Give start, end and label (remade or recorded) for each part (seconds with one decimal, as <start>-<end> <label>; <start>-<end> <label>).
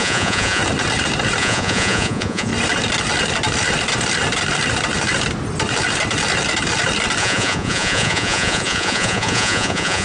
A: 0.0-0.6 remade; 0.6-1.4 recorded; 1.4-2.5 remade; 2.5-7.2 recorded; 7.2-10.0 remade